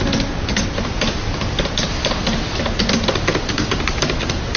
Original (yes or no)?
yes